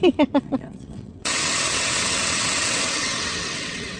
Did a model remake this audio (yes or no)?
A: yes